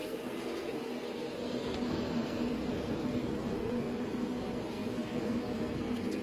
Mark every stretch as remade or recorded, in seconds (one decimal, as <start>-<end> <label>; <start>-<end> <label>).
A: 0.0-6.2 remade